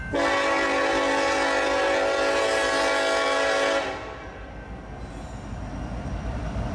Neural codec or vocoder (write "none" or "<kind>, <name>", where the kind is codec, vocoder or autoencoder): none